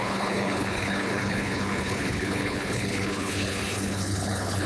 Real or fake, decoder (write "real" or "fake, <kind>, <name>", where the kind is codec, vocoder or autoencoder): fake, codec, HILCodec